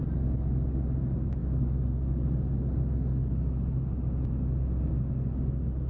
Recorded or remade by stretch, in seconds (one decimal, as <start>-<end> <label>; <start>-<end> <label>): 0.0-5.9 recorded